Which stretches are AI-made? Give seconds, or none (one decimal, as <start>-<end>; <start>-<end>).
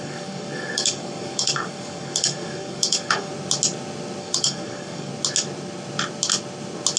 0.0-3.3; 4.2-5.1